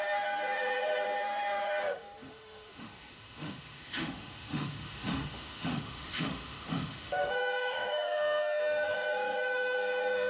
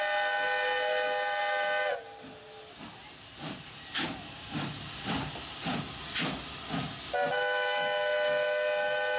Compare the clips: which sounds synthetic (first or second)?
first